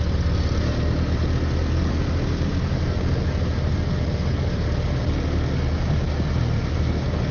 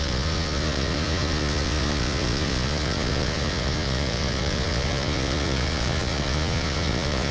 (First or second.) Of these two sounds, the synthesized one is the second